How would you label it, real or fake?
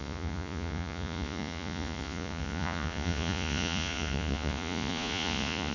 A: fake